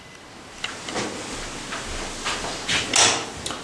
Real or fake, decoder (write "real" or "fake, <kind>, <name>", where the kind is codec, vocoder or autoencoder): real